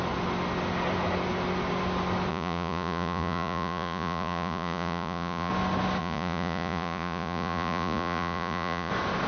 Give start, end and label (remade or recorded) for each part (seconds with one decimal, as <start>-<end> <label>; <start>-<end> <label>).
0.0-2.3 recorded; 2.3-5.5 remade; 5.5-6.0 recorded; 6.0-8.9 remade; 8.9-9.3 recorded